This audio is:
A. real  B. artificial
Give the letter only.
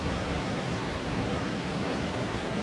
B